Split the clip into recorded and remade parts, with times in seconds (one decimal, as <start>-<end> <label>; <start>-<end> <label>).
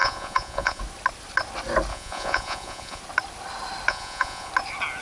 0.0-0.8 remade; 0.8-1.9 recorded; 1.9-3.0 remade; 3.0-3.9 recorded; 3.9-4.5 remade; 4.5-5.0 recorded